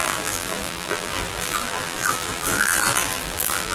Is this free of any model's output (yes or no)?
no